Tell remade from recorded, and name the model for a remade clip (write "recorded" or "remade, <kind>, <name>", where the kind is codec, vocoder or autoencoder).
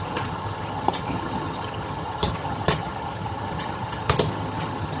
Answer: remade, vocoder, HiFi-GAN